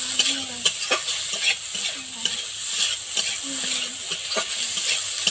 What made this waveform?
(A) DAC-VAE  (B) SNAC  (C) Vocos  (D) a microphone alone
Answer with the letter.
D